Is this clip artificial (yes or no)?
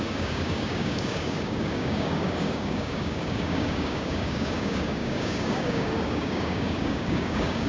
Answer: yes